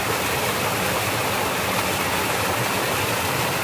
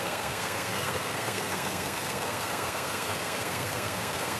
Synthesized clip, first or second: second